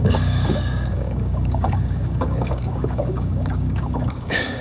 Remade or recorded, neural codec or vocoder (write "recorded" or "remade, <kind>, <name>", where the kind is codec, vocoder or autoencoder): remade, codec, DAC